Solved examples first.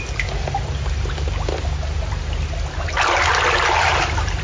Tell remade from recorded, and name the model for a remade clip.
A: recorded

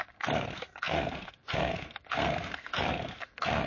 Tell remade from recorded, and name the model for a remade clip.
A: remade, codec, SNAC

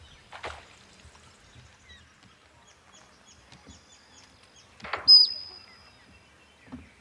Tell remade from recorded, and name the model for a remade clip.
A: recorded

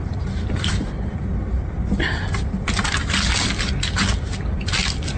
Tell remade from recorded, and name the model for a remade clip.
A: recorded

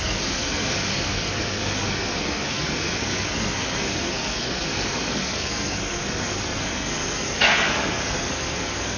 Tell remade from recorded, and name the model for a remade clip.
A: remade, codec, SNAC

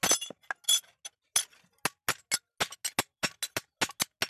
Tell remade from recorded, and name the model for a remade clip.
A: recorded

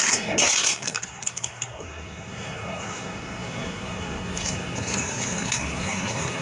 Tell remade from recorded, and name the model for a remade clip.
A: remade, codec, SNAC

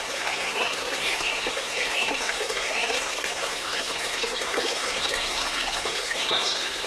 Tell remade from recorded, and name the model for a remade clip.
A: remade, codec, SNAC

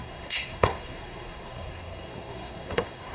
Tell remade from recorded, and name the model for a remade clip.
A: remade, codec, SNAC